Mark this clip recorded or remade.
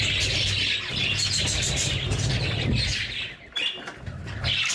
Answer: recorded